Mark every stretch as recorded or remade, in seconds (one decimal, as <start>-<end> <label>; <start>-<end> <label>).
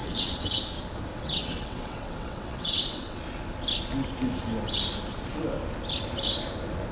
0.0-0.6 remade; 0.6-1.1 recorded; 1.1-3.2 remade; 3.2-6.9 recorded